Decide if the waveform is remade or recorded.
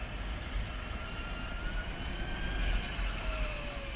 recorded